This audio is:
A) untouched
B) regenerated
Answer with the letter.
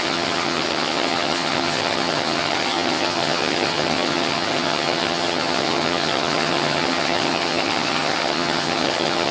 B